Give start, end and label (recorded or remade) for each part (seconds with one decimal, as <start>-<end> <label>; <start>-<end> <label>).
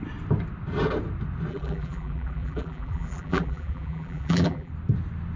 0.0-1.5 recorded; 1.5-4.7 remade; 4.7-5.4 recorded